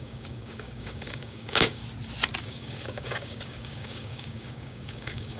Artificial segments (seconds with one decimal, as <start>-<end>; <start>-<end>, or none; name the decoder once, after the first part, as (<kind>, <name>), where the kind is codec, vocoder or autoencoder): 0.0-1.8 (codec, DAC); 2.4-5.4